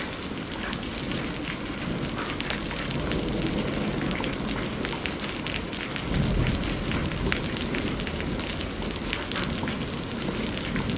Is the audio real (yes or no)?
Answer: yes